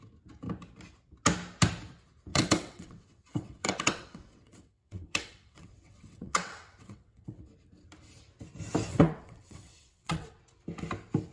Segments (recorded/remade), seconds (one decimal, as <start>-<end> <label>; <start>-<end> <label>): 0.0-2.3 recorded; 2.3-7.4 remade; 7.4-8.9 recorded; 8.9-10.4 remade; 10.4-11.3 recorded